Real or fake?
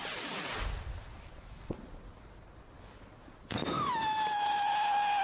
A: real